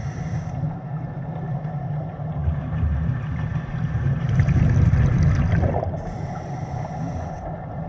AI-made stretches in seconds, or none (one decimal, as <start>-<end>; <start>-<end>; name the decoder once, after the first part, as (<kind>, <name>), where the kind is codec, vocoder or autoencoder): 2.4-3.1 (vocoder, BigVGAN v2)